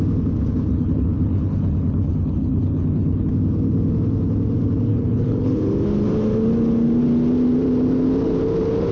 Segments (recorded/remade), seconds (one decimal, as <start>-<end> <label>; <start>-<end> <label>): 0.0-0.7 recorded; 0.7-3.3 remade; 3.3-4.9 recorded; 4.9-5.6 remade; 5.6-8.9 recorded